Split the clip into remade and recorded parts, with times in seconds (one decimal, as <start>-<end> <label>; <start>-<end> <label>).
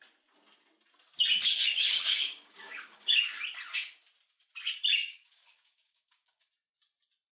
0.0-1.4 recorded; 1.4-3.4 remade; 3.4-5.0 recorded; 5.0-6.5 remade; 6.5-7.3 recorded